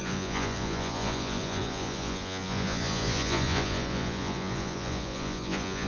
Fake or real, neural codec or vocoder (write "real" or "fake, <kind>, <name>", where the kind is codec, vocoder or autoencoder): fake, vocoder, Vocos